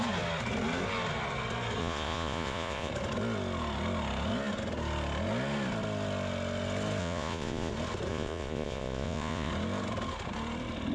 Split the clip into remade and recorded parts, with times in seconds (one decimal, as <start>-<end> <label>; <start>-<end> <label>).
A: 0.0-1.8 recorded; 1.8-2.9 remade; 2.9-7.0 recorded; 7.0-7.7 remade; 7.7-8.1 recorded; 8.1-9.5 remade; 9.5-10.9 recorded